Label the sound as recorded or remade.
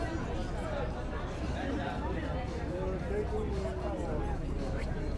recorded